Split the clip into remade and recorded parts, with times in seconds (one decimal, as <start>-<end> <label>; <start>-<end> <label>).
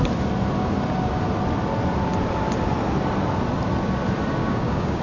0.0-4.4 recorded; 4.4-5.0 remade